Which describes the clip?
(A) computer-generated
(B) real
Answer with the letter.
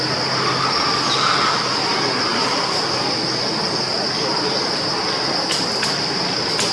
B